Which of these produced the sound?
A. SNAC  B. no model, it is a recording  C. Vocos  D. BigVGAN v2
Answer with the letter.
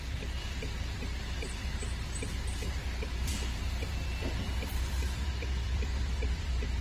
D